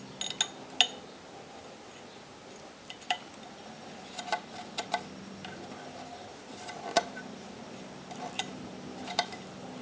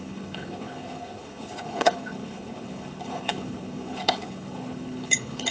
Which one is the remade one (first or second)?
second